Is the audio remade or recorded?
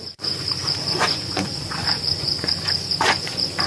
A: remade